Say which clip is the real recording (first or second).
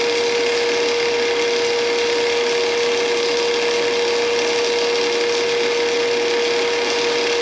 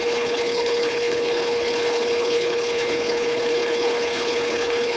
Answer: first